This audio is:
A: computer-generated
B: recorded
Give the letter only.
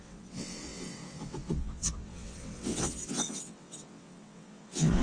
A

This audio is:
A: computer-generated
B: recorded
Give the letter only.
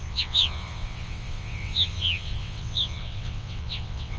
A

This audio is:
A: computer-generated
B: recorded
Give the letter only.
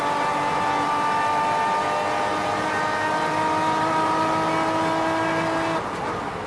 B